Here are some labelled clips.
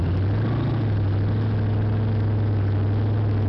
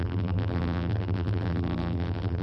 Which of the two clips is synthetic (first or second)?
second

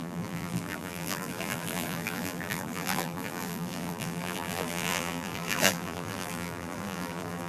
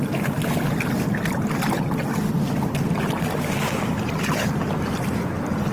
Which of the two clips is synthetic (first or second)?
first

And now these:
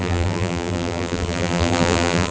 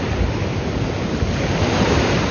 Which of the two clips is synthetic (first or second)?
first